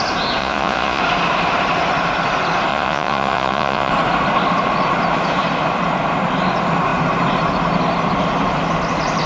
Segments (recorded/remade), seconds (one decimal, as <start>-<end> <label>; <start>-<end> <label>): 0.0-0.4 recorded; 0.4-1.0 remade; 1.0-2.7 recorded; 2.7-3.9 remade; 3.9-9.3 recorded